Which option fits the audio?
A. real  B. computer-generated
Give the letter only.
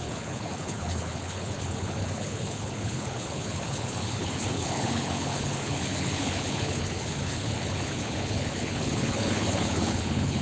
B